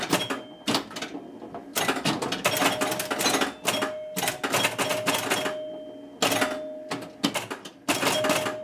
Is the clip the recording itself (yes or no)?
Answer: yes